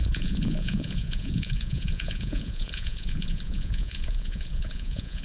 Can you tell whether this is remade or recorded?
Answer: remade